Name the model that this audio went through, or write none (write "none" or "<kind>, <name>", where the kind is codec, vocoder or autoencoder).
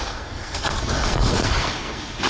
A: codec, SNAC